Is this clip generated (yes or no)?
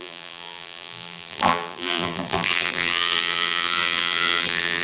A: yes